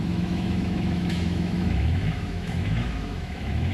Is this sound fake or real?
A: fake